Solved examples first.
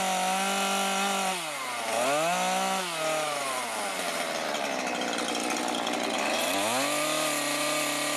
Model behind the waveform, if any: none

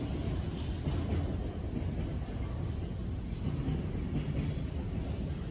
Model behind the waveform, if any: none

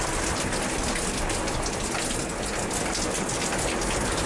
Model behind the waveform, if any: none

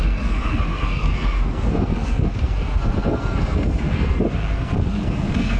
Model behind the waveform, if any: codec, SNAC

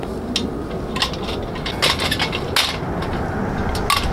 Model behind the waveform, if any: none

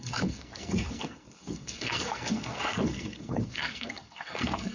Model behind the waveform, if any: codec, SNAC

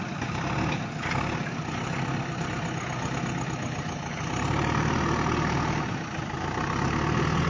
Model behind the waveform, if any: none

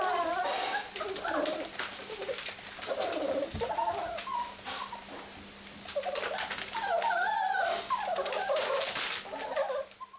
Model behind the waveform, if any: none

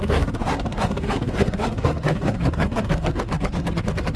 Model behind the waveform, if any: codec, SNAC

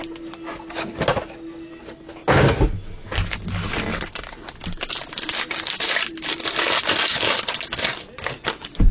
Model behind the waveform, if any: none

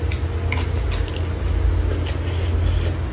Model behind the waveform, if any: none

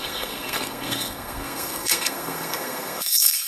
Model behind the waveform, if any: codec, SNAC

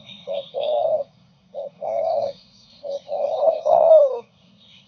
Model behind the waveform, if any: codec, SNAC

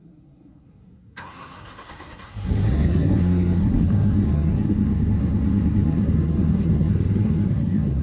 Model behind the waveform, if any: codec, SNAC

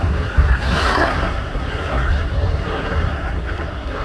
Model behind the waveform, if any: codec, SNAC